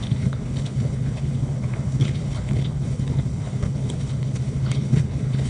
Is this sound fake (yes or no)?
yes